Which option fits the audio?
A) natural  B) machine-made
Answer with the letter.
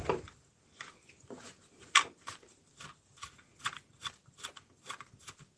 B